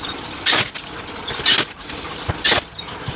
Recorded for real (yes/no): yes